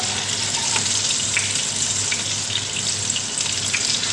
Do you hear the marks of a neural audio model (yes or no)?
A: no